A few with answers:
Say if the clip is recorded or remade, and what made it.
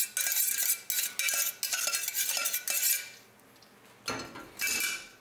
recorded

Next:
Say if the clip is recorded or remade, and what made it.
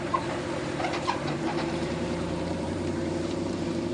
remade, vocoder, BigVGAN v2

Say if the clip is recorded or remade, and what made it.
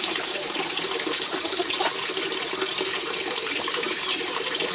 remade, vocoder, BigVGAN v2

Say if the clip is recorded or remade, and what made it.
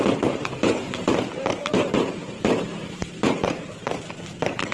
remade, vocoder, BigVGAN v2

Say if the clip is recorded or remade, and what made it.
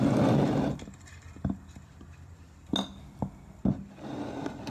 recorded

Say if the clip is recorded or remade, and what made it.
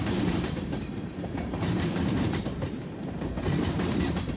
remade, vocoder, BigVGAN v2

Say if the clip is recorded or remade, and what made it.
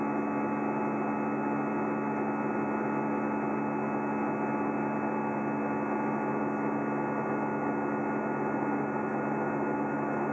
recorded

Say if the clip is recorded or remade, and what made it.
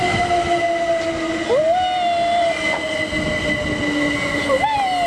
recorded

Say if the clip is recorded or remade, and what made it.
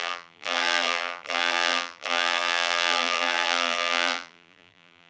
remade, vocoder, BigVGAN v2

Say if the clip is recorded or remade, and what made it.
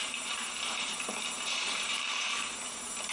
remade, vocoder, BigVGAN v2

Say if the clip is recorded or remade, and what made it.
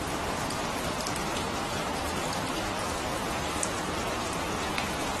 remade, vocoder, BigVGAN v2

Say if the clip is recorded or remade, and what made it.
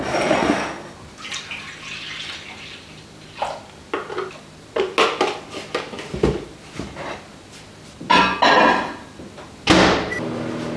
recorded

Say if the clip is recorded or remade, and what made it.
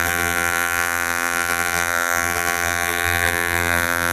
remade, vocoder, BigVGAN v2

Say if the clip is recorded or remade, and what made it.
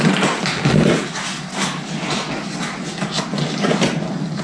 recorded